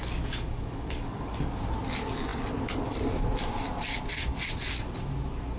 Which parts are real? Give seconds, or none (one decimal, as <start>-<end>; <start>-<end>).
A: 1.6-5.6